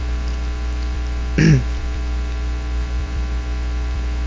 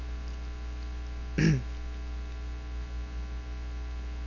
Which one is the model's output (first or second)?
first